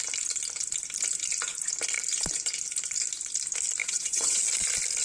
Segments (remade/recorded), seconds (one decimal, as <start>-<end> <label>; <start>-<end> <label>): 0.0-3.8 recorded; 3.8-4.4 remade; 4.4-5.0 recorded